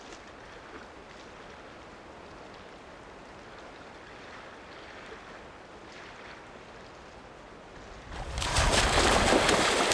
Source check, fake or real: real